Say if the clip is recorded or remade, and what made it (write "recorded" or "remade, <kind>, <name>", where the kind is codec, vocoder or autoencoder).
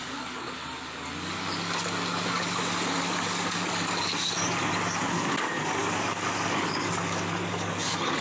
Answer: remade, codec, DAC